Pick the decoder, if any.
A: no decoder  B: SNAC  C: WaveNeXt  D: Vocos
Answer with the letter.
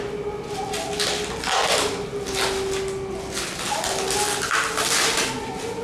A